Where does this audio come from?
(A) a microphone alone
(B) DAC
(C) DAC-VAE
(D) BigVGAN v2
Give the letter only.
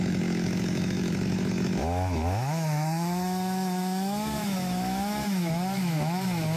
C